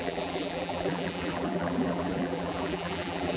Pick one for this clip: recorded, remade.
remade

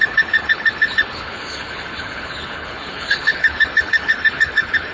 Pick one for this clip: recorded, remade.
remade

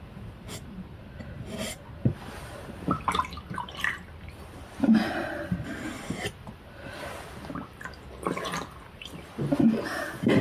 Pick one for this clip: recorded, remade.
recorded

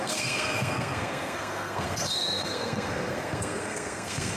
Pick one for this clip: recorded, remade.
remade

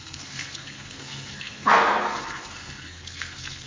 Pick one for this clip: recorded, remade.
remade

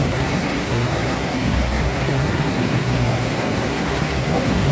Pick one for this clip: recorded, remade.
remade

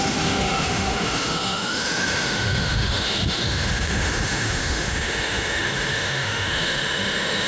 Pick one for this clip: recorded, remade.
remade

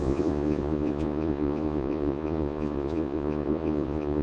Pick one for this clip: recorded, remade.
remade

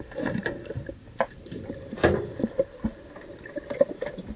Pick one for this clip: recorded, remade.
recorded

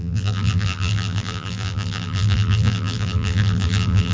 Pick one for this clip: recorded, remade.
remade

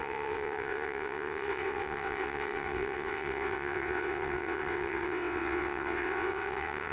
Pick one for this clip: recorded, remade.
remade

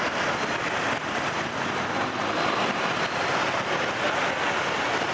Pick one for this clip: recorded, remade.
recorded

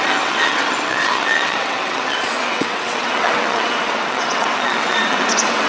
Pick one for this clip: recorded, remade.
remade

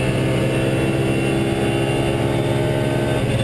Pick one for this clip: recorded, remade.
recorded